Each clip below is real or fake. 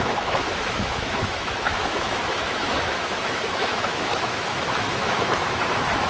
fake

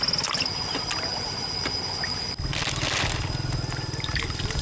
real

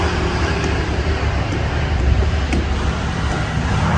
fake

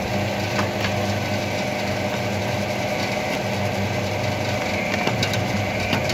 real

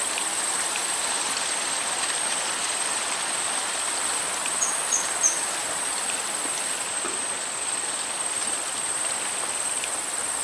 real